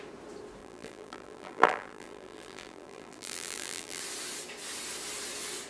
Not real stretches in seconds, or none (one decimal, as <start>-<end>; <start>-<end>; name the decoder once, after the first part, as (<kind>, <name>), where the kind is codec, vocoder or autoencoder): 0.6-4.0 (vocoder, BigVGAN v2)